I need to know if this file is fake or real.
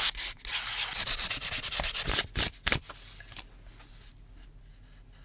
real